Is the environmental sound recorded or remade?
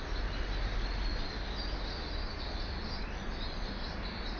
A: recorded